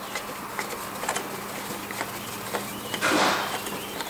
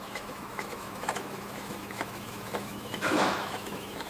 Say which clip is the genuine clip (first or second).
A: first